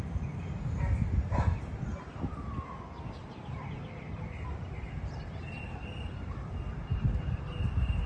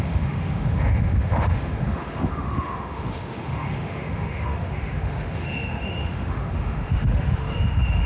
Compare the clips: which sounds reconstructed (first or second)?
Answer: second